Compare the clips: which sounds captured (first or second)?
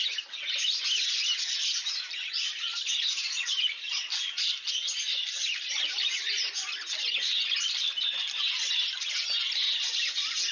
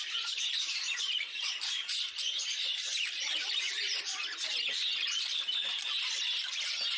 first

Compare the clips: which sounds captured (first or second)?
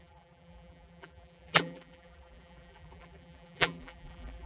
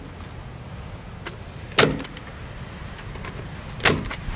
second